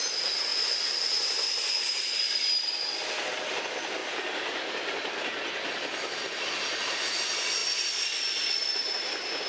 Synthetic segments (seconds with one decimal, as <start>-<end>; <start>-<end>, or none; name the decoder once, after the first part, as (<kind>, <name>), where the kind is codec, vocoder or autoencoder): 0.5-3.1 (vocoder, BigVGAN v2); 7.6-8.2